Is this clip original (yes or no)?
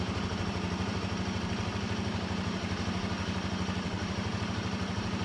no